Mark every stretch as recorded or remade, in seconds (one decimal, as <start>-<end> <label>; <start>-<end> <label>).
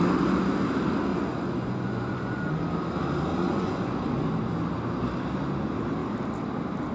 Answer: 0.0-1.1 recorded; 1.1-2.6 remade; 2.6-3.3 recorded; 3.3-4.0 remade; 4.0-6.9 recorded